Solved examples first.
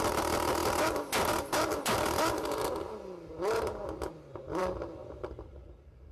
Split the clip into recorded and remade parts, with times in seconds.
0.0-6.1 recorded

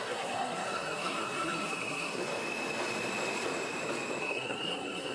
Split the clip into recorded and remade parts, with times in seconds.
0.0-2.2 remade; 2.2-4.2 recorded; 4.2-5.1 remade

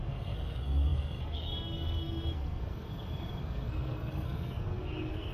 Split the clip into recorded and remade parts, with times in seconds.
0.0-5.3 remade

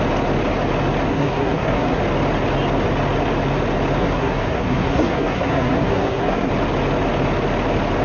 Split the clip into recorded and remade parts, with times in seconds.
0.0-1.1 recorded; 1.1-2.0 remade; 2.0-4.0 recorded; 4.0-6.5 remade; 6.5-8.0 recorded